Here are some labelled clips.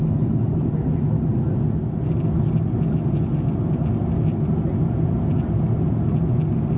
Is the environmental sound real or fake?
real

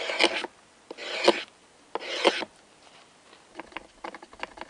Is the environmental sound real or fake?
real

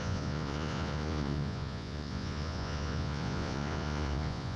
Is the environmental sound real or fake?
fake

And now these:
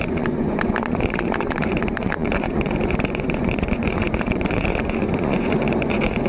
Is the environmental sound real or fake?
fake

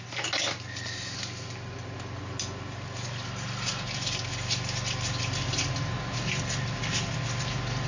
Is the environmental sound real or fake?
real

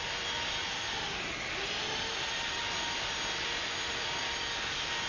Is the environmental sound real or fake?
real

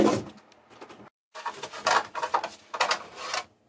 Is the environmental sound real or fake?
real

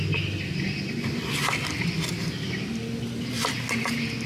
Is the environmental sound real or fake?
real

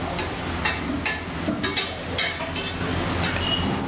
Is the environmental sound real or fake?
real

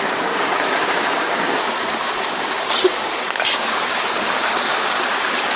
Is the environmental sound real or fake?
fake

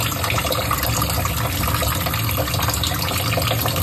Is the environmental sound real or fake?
real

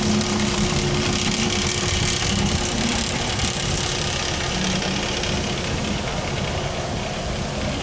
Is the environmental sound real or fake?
real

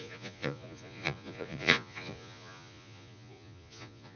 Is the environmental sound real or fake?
fake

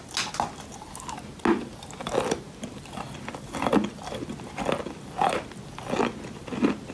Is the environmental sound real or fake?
real